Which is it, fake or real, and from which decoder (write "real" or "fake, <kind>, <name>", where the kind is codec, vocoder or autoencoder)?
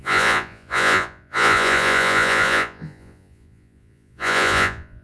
fake, vocoder, Vocos